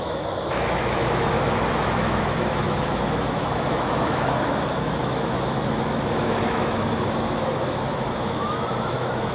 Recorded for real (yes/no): no